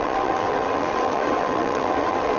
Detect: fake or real fake